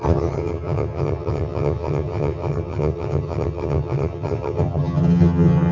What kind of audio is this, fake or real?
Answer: fake